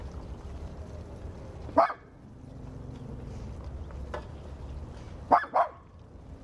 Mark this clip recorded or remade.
recorded